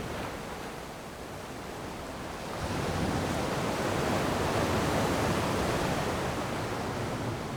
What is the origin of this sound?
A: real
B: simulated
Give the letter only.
A